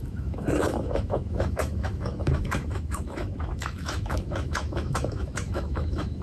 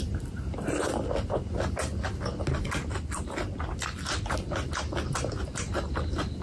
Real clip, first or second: second